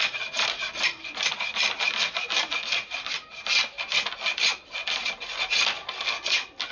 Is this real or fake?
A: real